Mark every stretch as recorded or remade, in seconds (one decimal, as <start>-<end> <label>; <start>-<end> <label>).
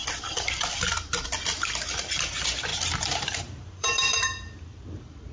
0.0-2.3 recorded; 2.3-5.3 remade